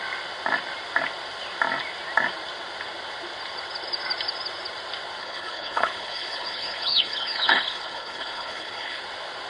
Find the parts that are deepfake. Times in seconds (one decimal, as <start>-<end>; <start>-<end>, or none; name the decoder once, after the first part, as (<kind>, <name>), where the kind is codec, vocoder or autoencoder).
5.2-9.0 (codec, HILCodec)